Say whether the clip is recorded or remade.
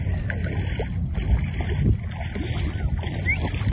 recorded